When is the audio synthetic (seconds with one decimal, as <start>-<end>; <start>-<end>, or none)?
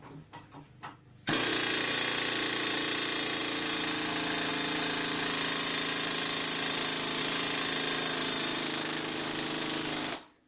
none